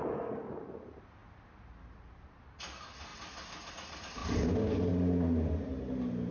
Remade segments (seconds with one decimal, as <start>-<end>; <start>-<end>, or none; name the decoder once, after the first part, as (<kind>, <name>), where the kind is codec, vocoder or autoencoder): none